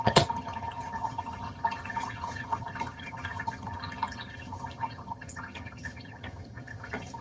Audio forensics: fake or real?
fake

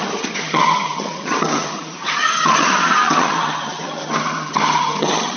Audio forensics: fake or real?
fake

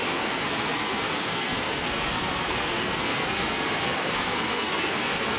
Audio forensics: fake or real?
fake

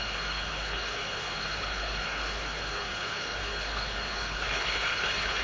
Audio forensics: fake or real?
fake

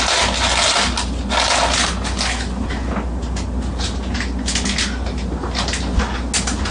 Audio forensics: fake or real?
real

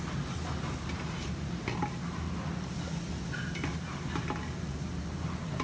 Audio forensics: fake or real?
real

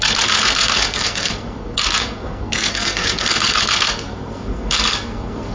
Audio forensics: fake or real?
fake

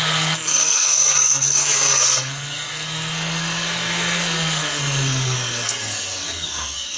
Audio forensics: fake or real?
fake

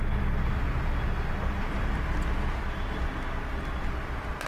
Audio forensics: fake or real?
real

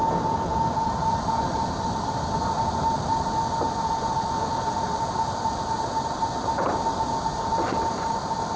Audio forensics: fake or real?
real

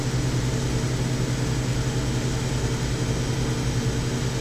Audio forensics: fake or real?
real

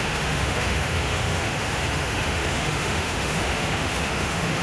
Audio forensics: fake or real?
fake